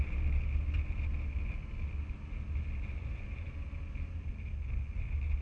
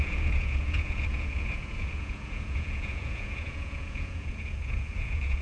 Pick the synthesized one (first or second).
second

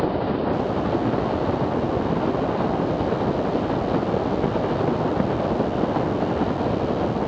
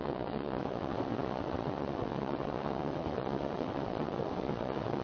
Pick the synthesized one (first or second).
second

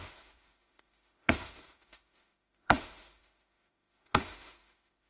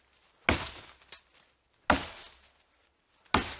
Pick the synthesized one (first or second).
first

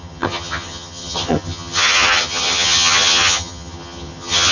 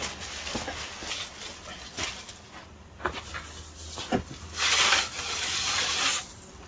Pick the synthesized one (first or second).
first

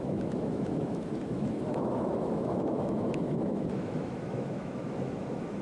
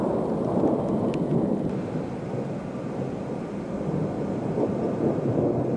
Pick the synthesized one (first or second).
first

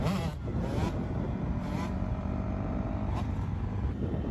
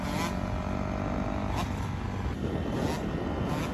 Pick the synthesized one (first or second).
first